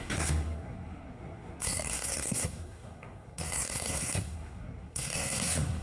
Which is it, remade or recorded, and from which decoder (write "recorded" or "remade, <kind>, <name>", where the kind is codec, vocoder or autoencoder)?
remade, codec, SNAC